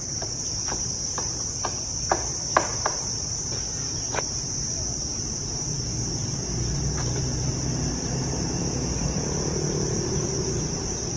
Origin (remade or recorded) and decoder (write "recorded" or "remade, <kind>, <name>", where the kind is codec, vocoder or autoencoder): remade, vocoder, BigVGAN v2